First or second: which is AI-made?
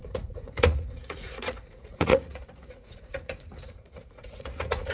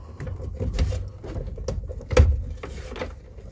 first